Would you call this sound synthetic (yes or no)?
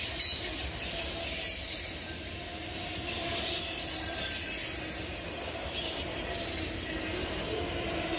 no